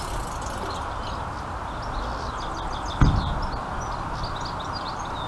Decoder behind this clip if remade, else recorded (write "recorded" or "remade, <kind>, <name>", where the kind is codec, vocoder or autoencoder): recorded